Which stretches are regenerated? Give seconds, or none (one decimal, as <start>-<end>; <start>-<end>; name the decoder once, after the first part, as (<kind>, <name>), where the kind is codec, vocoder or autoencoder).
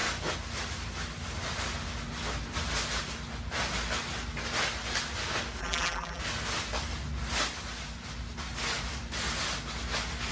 5.6-6.2 (vocoder, BigVGAN v2)